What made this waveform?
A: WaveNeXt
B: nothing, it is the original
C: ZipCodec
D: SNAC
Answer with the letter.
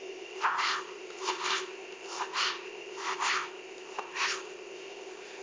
C